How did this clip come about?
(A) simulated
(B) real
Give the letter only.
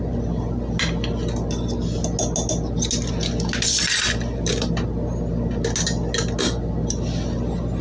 B